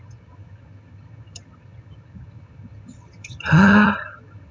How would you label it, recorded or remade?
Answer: remade